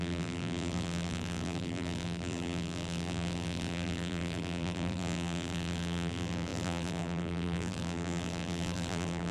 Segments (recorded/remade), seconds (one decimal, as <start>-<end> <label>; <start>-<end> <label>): 0.0-9.3 remade